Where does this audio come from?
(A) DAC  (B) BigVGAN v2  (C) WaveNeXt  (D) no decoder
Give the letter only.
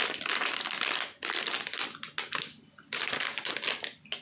D